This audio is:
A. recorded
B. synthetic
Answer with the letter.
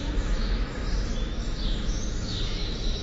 B